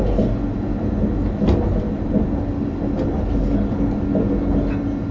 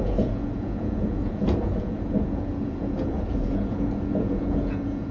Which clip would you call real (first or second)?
first